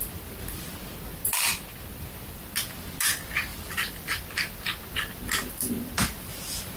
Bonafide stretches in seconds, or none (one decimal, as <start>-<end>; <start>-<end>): 0.0-3.5; 4.2-5.4